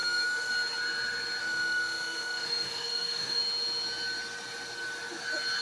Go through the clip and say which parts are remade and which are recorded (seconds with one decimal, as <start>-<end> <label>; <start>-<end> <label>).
0.0-0.5 remade; 0.5-1.4 recorded; 1.4-3.4 remade; 3.4-5.6 recorded